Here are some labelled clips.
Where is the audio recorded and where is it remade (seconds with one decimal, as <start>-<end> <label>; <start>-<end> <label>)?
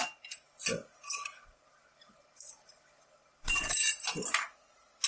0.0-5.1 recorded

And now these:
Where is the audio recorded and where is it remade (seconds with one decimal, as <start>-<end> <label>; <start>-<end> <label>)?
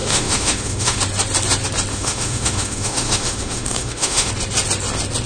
0.0-1.0 remade; 1.0-1.9 recorded; 1.9-4.3 remade; 4.3-5.3 recorded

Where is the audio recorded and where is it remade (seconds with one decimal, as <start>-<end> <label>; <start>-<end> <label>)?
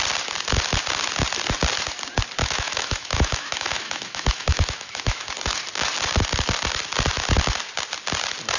0.0-2.4 recorded; 2.4-5.3 remade; 5.3-8.6 recorded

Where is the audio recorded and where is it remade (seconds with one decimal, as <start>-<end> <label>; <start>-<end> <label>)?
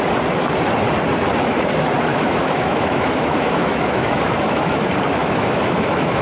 0.0-2.1 recorded; 2.1-4.8 remade; 4.8-5.2 recorded; 5.2-6.2 remade